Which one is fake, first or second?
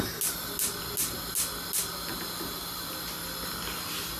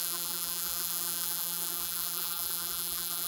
second